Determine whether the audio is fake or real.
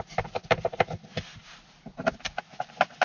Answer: fake